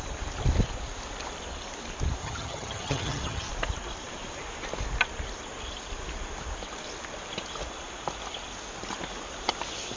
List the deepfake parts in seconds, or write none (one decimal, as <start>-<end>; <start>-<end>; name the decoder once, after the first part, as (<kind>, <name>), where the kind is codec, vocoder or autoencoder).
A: 2.2-3.5 (vocoder, HiFi-GAN)